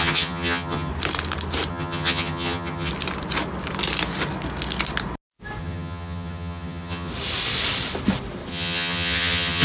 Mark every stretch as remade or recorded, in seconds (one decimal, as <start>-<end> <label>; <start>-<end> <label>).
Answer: 0.0-0.9 remade; 0.9-1.7 recorded; 1.7-2.9 remade; 2.9-5.6 recorded; 5.6-7.1 remade; 7.1-8.5 recorded; 8.5-9.6 remade